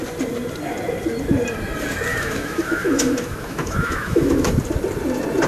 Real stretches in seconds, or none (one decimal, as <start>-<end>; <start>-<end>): 0.0-2.1; 4.5-5.5